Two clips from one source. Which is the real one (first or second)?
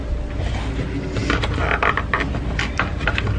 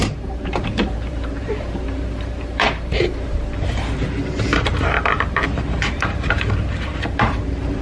first